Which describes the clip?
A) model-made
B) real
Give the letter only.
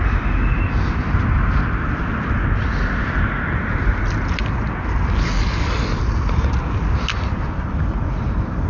B